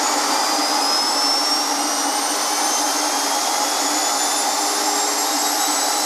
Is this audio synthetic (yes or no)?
no